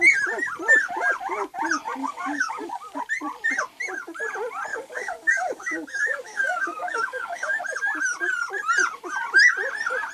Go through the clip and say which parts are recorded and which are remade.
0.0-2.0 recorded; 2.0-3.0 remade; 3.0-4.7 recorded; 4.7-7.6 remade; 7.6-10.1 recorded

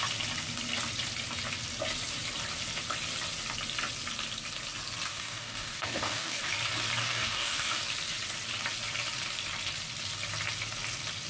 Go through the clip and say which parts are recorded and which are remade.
0.0-5.1 recorded; 5.1-6.4 remade; 6.4-7.0 recorded; 7.0-7.8 remade; 7.8-11.3 recorded

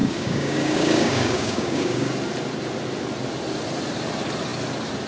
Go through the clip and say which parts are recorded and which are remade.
0.0-2.1 remade; 2.1-5.1 recorded